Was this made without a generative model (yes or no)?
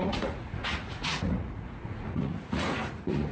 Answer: no